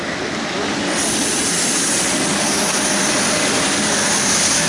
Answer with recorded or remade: recorded